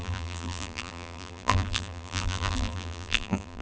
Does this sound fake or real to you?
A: fake